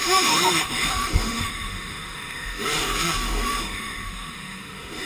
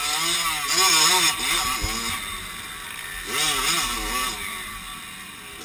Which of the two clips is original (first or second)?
second